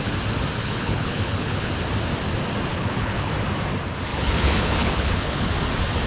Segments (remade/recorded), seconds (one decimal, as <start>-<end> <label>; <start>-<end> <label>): 0.0-0.6 recorded; 0.6-1.7 remade; 1.7-2.7 recorded; 2.7-3.3 remade; 3.3-4.1 recorded; 4.1-5.5 remade; 5.5-6.1 recorded